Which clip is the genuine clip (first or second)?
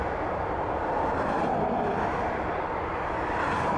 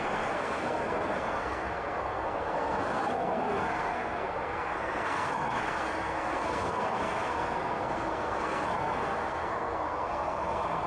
first